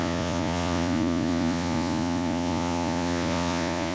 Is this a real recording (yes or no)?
no